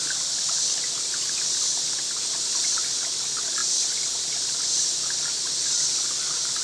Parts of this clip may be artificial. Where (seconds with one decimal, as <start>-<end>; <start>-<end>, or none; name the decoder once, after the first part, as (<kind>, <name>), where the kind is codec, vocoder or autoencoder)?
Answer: none